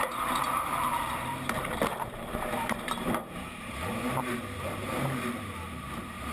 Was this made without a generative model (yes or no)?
no